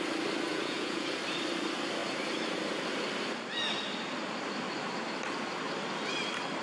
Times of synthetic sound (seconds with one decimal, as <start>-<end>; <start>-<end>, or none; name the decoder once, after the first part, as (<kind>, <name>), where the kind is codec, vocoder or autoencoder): 0.5-1.1 (vocoder, Vocos)